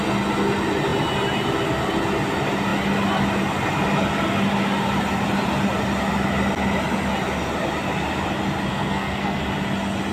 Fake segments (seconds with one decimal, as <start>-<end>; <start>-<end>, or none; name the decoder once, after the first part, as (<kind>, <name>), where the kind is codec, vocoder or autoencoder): 8.7-9.4 (codec, SNAC)